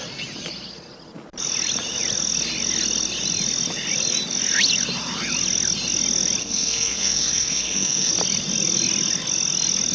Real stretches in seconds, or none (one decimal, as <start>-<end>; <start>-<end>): 0.0-6.4; 8.1-9.9